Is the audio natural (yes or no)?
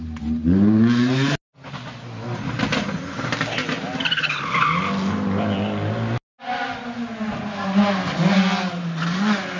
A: yes